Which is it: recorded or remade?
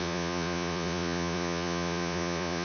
remade